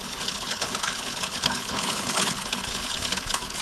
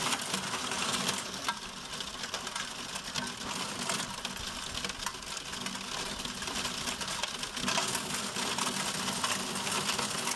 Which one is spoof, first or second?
first